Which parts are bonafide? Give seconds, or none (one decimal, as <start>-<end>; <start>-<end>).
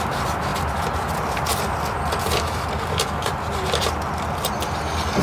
0.0-5.2